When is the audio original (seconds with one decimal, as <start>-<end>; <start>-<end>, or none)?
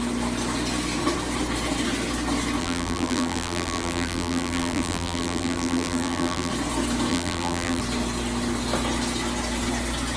0.0-2.6; 6.5-7.1; 7.8-10.2